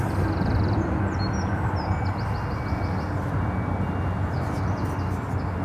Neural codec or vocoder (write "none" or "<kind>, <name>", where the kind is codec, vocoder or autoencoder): none